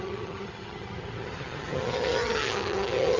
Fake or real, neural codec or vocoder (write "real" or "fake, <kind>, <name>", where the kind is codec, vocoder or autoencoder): fake, vocoder, HiFi-GAN